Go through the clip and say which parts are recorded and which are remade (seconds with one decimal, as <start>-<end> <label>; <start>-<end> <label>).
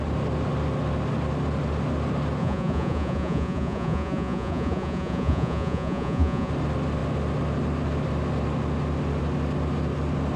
0.0-2.4 recorded; 2.4-6.5 remade; 6.5-10.4 recorded